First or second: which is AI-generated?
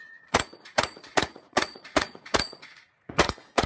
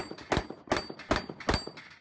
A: first